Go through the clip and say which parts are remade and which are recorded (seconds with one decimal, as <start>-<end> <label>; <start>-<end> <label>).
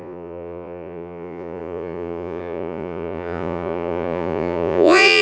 0.0-5.2 remade